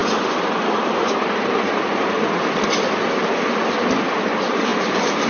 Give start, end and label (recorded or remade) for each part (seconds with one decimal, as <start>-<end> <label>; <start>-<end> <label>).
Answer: 0.0-5.3 recorded